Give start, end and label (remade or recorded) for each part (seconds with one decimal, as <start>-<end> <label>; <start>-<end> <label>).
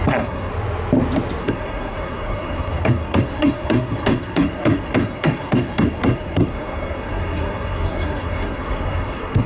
0.0-0.5 remade; 0.5-1.4 recorded; 1.4-9.5 remade